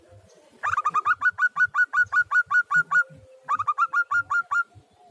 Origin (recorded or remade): recorded